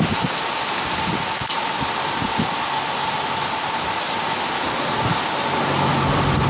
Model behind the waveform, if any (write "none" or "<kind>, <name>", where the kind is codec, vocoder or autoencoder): none